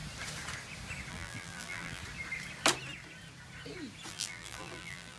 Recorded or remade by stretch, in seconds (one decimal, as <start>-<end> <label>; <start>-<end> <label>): 0.0-1.1 recorded; 1.1-2.0 remade; 2.0-4.1 recorded; 4.1-5.2 remade